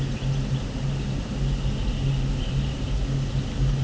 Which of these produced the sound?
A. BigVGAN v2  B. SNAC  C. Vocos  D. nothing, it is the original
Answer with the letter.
D